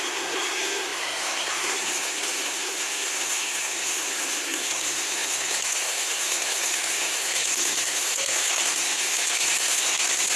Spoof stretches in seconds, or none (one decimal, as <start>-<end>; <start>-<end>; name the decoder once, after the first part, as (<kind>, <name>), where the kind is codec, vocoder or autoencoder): 0.0-10.4 (codec, SNAC)